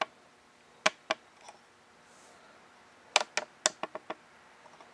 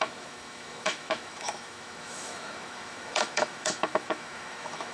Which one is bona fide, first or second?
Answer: first